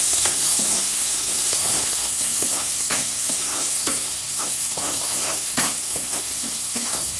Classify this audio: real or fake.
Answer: fake